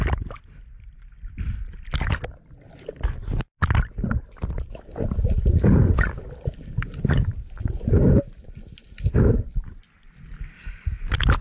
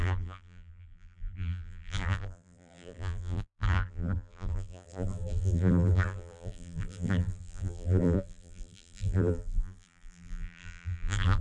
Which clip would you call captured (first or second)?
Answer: first